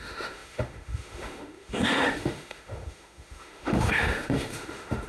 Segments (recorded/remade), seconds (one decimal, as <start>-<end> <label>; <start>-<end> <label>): 0.0-5.1 remade

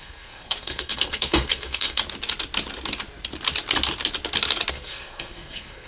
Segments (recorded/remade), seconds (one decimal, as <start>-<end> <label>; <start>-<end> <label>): 0.0-2.0 remade; 2.0-4.7 recorded; 4.7-5.9 remade

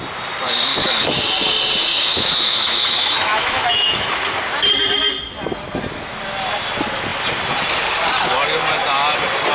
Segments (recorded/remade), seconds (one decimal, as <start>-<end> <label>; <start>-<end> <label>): 0.0-0.7 recorded; 0.7-1.2 remade; 1.2-1.9 recorded; 1.9-4.2 remade; 4.2-9.5 recorded

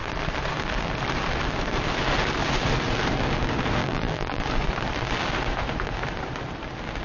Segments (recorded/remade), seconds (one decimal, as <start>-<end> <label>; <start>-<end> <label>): 0.0-3.8 recorded; 3.8-4.4 remade; 4.4-7.0 recorded

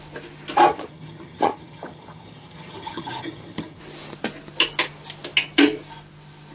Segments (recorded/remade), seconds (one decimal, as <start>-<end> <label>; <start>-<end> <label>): 0.0-0.7 recorded; 0.7-3.8 remade; 3.8-6.5 recorded

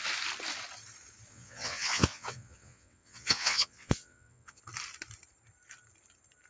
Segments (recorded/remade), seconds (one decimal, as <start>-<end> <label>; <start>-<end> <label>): 0.0-1.3 recorded; 1.3-4.6 remade; 4.6-6.5 recorded

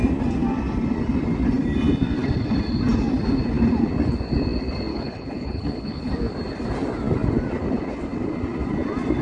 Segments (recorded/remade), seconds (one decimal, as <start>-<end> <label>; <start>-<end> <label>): 0.0-4.9 recorded; 4.9-6.1 remade; 6.1-9.2 recorded

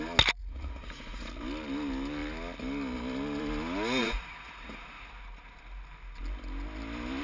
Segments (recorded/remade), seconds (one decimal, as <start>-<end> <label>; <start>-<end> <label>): 0.0-0.4 recorded; 0.4-1.3 remade; 1.3-4.0 recorded; 4.0-5.1 remade; 5.1-7.2 recorded